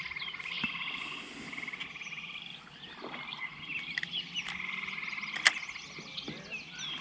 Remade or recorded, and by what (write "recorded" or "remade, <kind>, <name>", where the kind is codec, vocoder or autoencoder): recorded